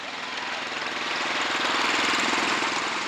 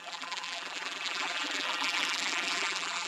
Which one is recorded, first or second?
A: first